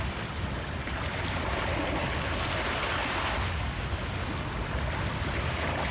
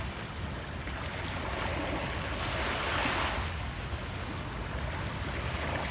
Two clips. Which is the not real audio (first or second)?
first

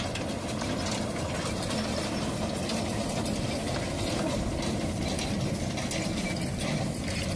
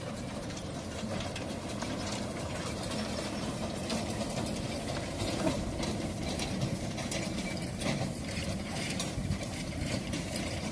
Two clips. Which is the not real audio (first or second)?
second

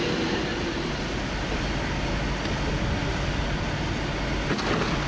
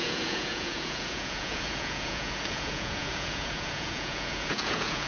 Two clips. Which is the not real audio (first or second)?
second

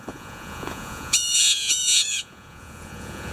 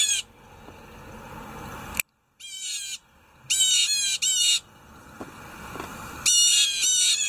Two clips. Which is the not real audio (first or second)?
first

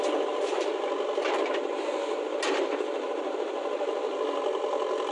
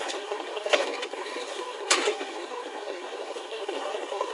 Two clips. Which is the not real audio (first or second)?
second